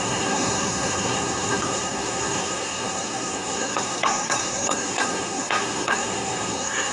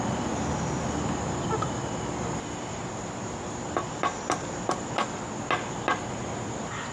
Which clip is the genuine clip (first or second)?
second